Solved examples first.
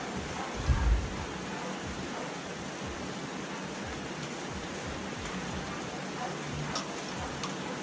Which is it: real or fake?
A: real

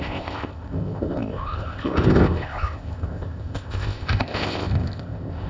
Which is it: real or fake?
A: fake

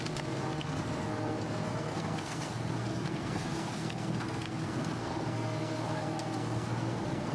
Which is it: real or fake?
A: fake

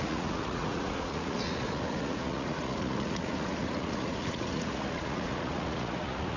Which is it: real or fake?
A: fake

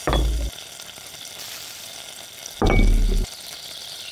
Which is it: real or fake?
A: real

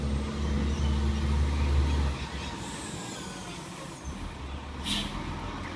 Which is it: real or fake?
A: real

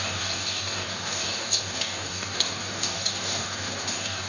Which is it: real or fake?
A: fake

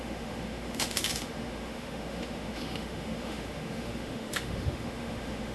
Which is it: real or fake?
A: fake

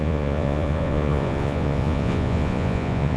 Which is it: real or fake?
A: fake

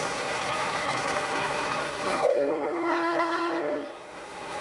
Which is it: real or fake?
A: fake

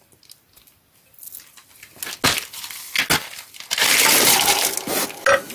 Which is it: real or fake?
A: real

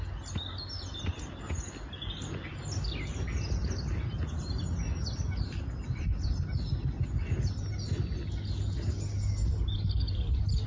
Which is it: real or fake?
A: real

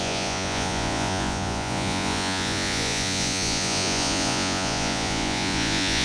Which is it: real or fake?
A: fake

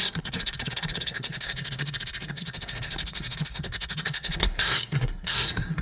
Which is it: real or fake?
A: fake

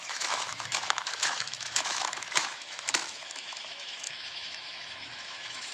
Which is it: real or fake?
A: fake